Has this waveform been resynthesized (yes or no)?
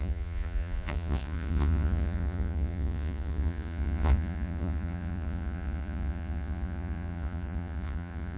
yes